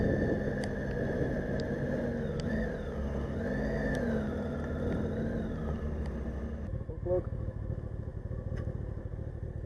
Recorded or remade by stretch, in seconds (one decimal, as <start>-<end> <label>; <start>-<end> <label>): 0.0-9.7 recorded